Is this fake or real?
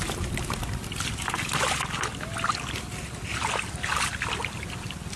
real